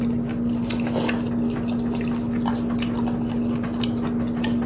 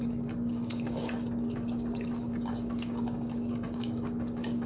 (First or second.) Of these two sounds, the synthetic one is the second